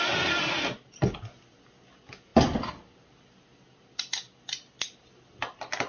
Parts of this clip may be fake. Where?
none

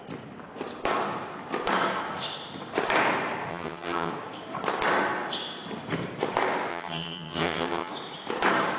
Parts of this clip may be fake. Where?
3.5-4.1 (vocoder, HiFi-GAN); 6.7-7.9

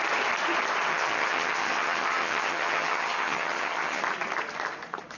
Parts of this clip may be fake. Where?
0.9-4.0 (vocoder, HiFi-GAN)

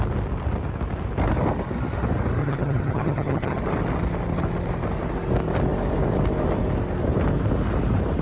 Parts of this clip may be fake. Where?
2.4-3.6 (vocoder, HiFi-GAN)

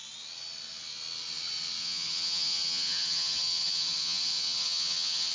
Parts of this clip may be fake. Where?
1.8-5.3 (vocoder, HiFi-GAN)

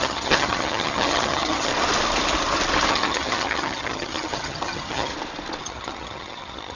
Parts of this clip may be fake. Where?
0.0-1.7 (vocoder, HiFi-GAN); 2.9-5.1; 5.6-6.8

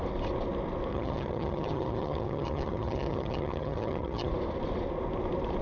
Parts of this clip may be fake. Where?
0.9-4.3 (vocoder, HiFi-GAN)